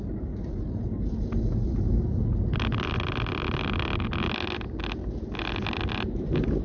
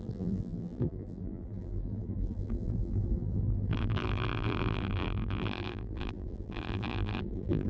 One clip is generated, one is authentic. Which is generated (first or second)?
second